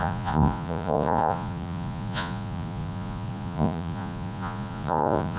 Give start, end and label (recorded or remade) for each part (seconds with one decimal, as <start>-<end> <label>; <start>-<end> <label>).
0.0-5.4 remade